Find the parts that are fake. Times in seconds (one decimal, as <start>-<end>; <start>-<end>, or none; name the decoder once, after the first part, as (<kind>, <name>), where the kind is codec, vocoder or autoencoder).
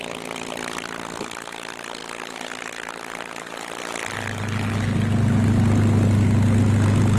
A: none